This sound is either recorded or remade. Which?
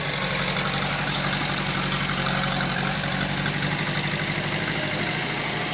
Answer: recorded